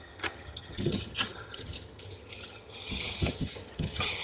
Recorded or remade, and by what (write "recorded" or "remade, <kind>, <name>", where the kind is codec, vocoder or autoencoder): remade, vocoder, HiFi-GAN